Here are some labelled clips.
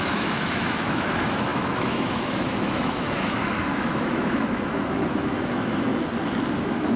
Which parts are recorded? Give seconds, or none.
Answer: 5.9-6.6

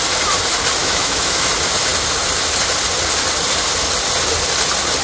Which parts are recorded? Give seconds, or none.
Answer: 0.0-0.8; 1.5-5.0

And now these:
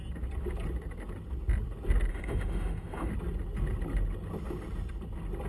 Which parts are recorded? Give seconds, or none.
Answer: 0.0-2.1; 3.1-5.5

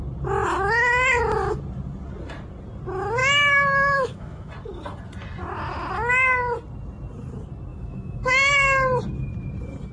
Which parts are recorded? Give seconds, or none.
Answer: 0.0-3.2; 4.5-7.7; 8.5-9.9